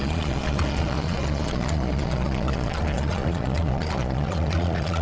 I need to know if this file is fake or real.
fake